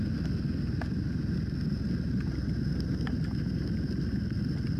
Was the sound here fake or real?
real